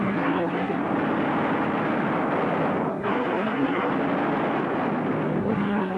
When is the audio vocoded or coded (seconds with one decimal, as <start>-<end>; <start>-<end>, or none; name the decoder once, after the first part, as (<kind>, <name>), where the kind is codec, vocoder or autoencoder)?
0.0-0.8 (codec, SNAC); 2.9-3.9; 5.4-6.0